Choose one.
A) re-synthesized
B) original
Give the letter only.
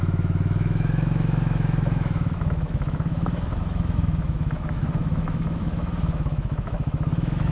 A